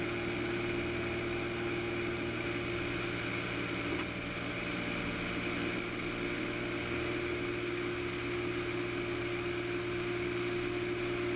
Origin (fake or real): real